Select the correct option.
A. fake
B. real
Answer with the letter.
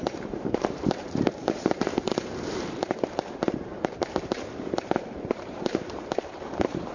A